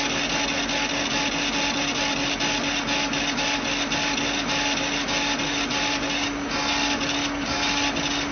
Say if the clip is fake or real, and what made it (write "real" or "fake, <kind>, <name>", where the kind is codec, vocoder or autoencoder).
real